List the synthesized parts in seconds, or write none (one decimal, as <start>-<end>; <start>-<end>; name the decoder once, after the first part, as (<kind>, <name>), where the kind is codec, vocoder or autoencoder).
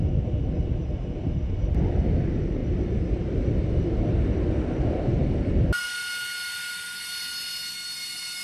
none